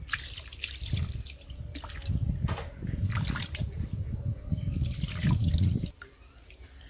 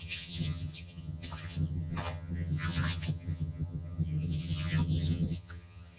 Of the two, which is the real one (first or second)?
first